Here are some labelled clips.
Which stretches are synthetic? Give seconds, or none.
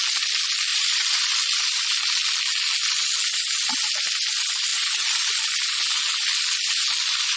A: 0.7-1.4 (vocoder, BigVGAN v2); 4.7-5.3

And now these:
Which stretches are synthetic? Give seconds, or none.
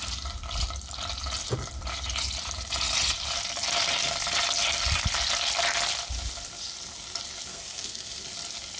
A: 7.5-8.2 (codec, SNAC)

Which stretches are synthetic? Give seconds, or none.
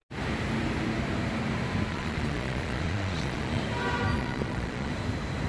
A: 1.9-3.6 (vocoder, Vocos); 4.1-4.9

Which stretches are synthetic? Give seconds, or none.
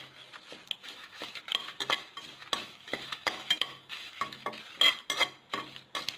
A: 0.8-1.4 (autoencoder, DAC-VAE); 2.6-4.5